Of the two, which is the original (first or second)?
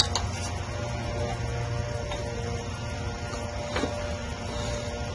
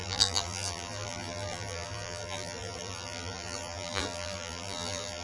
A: first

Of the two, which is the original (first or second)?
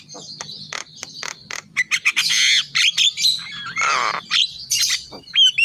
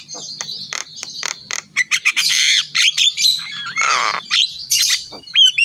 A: first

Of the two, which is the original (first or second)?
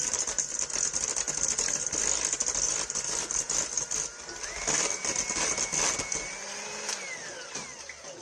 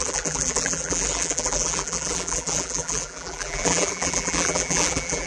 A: first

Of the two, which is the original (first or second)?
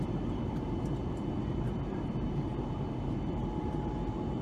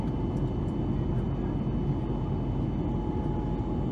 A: second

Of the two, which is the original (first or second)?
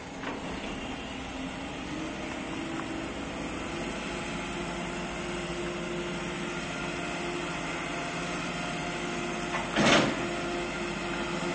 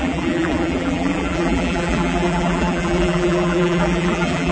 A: first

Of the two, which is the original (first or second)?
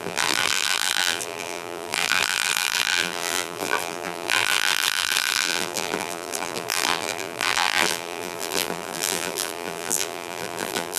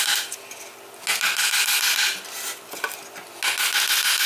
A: second